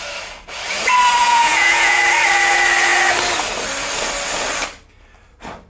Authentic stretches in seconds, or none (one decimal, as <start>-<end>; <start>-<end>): 0.0-1.2; 2.0-5.7